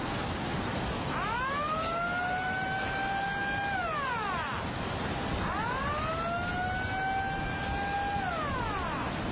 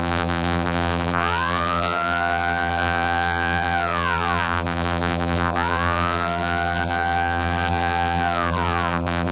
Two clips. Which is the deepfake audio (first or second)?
second